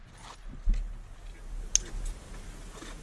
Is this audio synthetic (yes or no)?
no